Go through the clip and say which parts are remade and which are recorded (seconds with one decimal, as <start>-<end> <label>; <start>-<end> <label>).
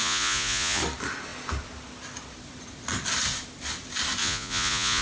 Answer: 0.0-0.8 remade; 0.8-4.2 recorded; 4.2-5.0 remade